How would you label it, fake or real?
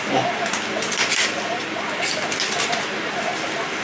real